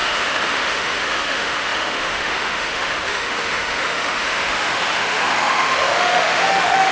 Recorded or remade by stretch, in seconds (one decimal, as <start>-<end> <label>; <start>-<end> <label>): 0.0-6.9 remade